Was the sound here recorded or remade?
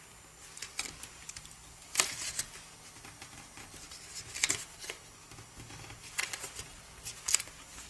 recorded